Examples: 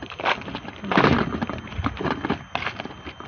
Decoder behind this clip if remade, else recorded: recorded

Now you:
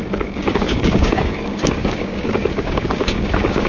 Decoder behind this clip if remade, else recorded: remade, codec, DAC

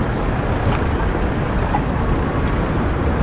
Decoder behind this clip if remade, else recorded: recorded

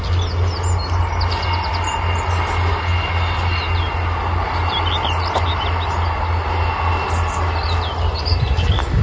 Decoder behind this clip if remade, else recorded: recorded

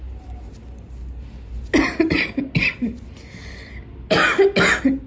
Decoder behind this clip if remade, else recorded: recorded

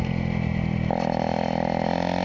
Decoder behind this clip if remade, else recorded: recorded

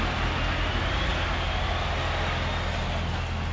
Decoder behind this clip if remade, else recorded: recorded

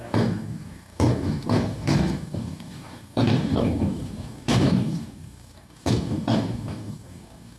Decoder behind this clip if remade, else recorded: remade, codec, DAC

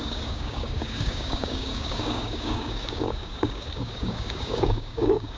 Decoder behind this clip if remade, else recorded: remade, codec, DAC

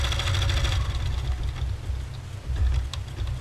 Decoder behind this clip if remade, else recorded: recorded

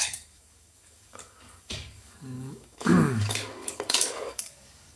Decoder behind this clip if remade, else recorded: remade, codec, DAC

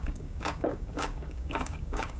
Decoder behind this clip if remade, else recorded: remade, codec, DAC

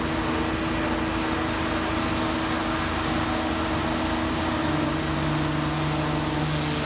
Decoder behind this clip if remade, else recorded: recorded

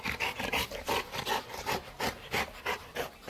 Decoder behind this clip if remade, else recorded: recorded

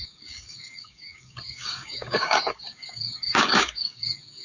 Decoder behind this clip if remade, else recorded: remade, codec, DAC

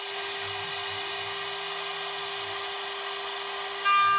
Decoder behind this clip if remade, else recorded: recorded